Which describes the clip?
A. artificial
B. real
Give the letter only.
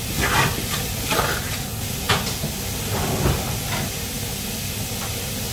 B